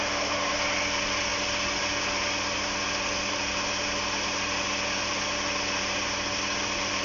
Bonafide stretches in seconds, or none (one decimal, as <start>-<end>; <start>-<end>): 0.0-7.0